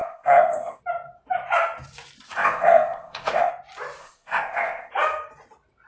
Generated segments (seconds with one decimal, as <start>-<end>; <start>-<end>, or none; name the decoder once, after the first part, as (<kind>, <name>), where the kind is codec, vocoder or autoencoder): 0.0-0.8 (codec, ZipCodec); 2.3-3.5; 4.0-4.9